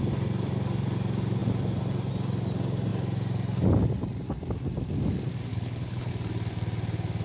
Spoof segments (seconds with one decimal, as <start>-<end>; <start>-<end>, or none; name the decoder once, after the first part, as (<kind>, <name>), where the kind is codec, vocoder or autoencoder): 5.5-6.1 (codec, HILCodec)